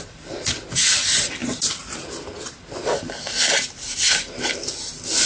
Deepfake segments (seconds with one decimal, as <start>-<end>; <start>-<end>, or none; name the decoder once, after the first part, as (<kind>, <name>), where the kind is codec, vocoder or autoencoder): none